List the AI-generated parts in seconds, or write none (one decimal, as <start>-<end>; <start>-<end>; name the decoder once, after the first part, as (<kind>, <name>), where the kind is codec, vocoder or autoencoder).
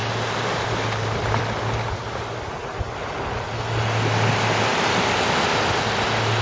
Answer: none